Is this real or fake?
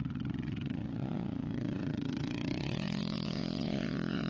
fake